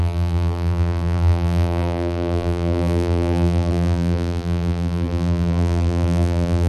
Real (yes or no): no